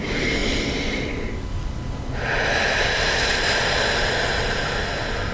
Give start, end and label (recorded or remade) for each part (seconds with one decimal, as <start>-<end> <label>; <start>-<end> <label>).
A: 0.0-5.3 recorded